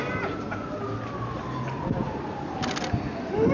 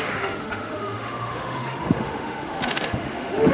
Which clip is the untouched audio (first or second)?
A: first